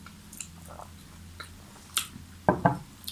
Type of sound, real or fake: real